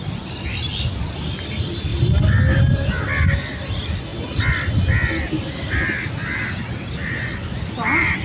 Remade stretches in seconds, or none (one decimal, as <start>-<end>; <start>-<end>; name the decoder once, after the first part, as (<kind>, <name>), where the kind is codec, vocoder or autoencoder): none